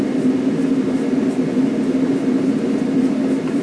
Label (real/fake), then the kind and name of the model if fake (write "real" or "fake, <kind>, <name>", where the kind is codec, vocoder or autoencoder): real